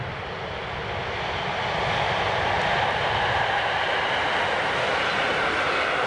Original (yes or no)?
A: yes